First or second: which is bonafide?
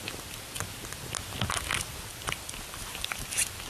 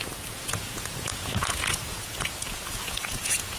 first